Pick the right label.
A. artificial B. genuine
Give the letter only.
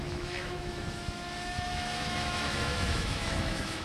A